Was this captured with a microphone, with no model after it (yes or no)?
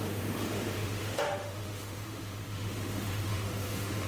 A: no